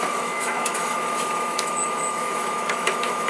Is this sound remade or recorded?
remade